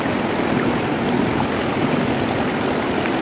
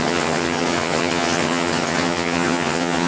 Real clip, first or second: first